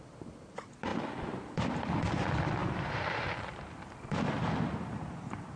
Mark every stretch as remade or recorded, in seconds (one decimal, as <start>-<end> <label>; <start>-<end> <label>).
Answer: 0.0-2.6 recorded; 2.6-3.7 remade; 3.7-4.4 recorded; 4.4-5.6 remade